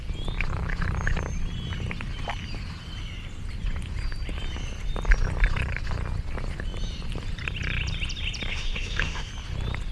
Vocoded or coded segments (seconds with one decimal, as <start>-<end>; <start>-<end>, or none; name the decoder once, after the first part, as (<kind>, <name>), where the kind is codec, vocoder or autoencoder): 8.5-9.3 (autoencoder, DAC-VAE)